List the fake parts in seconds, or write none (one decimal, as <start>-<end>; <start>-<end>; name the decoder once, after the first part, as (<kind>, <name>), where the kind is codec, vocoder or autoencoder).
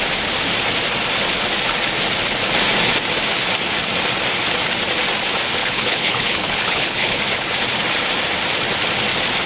5.6-7.2 (codec, HILCodec)